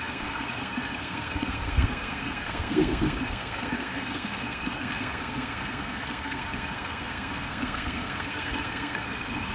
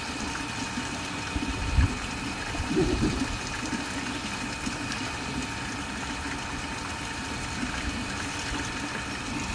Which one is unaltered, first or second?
second